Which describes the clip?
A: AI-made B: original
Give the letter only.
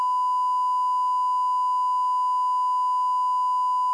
B